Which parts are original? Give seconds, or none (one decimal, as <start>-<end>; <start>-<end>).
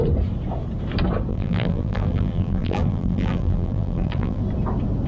0.0-1.3; 4.4-5.1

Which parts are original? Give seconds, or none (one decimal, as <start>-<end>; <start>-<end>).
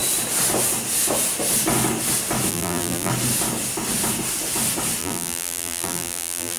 0.0-2.5; 3.1-5.0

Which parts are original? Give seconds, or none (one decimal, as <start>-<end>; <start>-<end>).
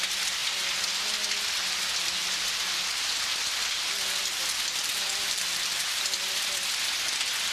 0.0-2.2; 6.0-7.5